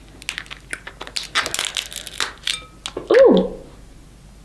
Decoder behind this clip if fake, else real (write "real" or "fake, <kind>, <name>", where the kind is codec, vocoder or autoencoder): real